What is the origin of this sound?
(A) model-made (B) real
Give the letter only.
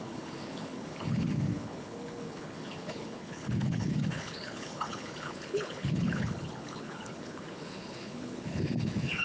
A